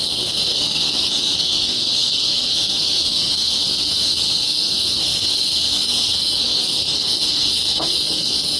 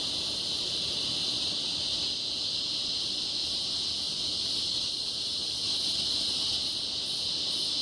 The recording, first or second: second